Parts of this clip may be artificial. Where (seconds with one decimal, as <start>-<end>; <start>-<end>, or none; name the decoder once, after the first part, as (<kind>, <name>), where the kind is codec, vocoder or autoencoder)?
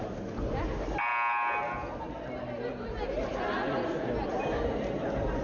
none